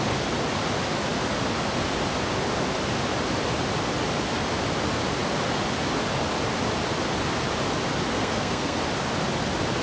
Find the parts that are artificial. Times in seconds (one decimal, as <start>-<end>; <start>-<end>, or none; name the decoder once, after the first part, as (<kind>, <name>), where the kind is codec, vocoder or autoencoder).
8.1-8.8 (codec, SNAC)